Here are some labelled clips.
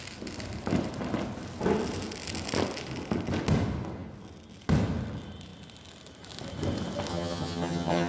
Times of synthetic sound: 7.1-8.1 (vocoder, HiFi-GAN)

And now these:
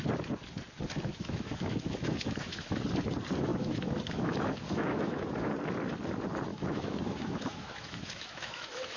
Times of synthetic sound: 1.1-2.9 (autoencoder, DAC-VAE); 3.5-5.5; 6.5-9.0

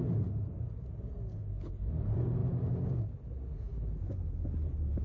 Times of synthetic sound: 1.3-1.9 (codec, HILCodec)

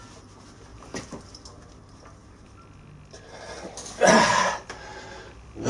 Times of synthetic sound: 0.7-1.3 (vocoder, BigVGAN v2)